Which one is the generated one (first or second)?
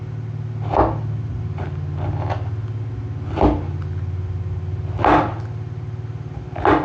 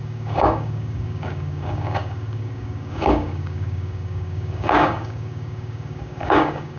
second